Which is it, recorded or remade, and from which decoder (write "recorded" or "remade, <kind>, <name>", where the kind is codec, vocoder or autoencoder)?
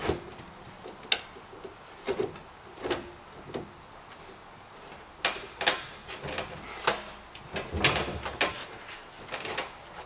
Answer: recorded